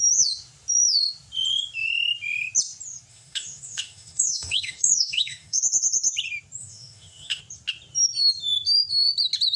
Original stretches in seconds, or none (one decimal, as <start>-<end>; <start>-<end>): 0.0-3.1; 5.6-6.6; 7.4-9.6